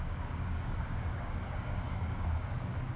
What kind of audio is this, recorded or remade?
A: remade